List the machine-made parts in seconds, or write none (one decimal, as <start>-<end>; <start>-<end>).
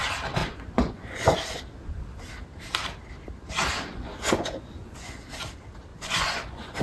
0.4-1.6; 3.9-5.2; 5.9-6.8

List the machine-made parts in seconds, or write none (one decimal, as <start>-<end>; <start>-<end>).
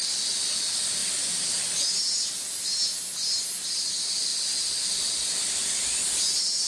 none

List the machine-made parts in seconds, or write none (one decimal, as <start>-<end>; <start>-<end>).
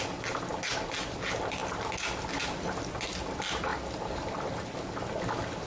none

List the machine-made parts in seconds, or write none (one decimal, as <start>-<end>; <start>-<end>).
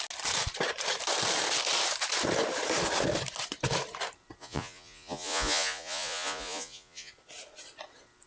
4.4-7.1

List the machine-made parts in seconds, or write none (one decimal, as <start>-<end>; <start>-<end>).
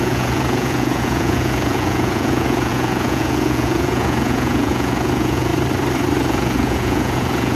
0.0-5.5; 6.3-7.6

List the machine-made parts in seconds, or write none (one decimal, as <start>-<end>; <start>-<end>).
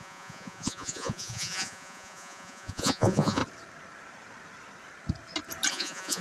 0.0-3.4; 5.7-6.2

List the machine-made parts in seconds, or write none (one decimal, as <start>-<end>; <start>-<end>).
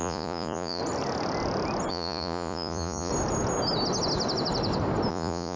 0.0-0.8; 1.9-3.1; 5.1-5.6